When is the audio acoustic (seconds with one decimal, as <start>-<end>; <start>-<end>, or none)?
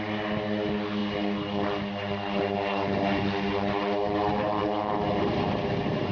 0.0-6.1